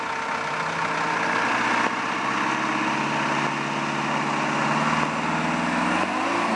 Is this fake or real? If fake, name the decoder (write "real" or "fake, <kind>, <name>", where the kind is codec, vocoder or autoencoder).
real